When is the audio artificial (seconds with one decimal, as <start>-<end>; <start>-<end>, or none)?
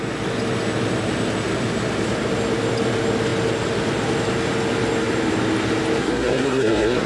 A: 6.0-7.1